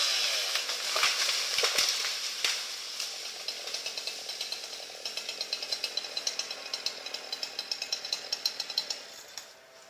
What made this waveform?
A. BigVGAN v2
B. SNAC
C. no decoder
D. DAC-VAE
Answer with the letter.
C